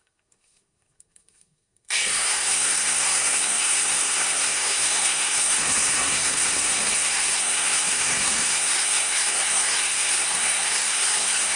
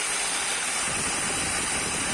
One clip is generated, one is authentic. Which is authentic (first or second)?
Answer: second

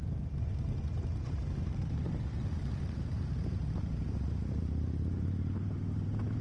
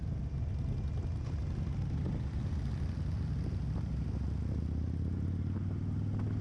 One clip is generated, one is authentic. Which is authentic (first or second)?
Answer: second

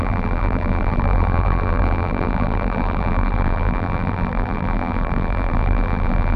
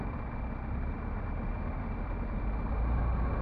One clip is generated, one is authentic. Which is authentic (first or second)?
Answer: second